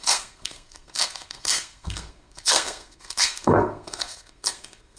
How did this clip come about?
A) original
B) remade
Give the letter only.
B